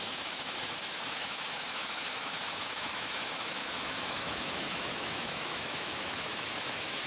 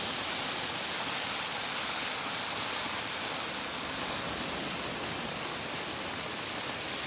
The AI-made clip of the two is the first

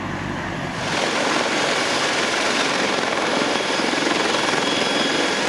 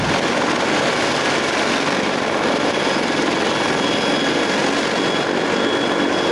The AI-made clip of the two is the first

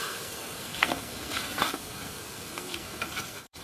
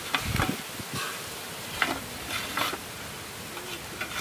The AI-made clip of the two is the first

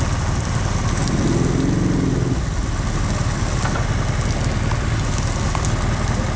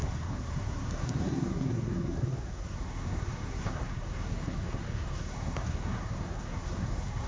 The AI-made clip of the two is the second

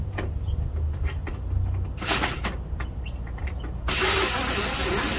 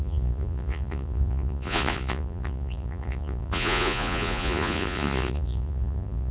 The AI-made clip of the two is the second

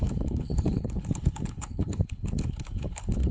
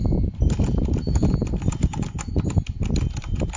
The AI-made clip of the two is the first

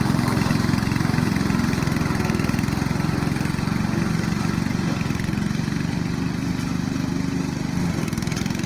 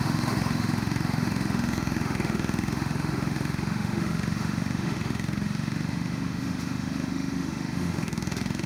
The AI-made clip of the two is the second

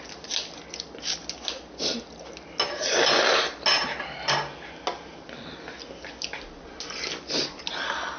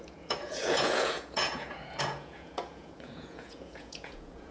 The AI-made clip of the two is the second